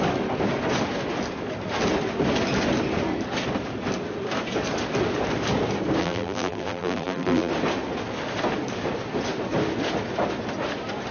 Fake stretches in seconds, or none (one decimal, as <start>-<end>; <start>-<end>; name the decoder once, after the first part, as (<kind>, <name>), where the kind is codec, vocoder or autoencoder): 6.0-7.5 (vocoder, BigVGAN v2)